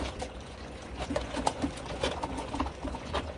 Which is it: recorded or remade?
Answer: remade